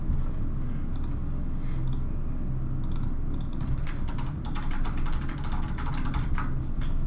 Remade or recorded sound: recorded